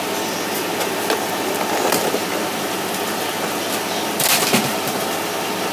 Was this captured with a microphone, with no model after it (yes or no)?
yes